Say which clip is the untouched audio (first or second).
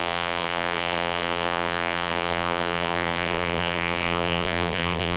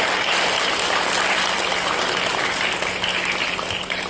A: second